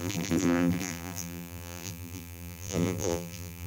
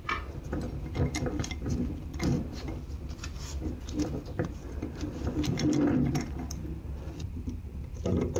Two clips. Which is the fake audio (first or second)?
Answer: first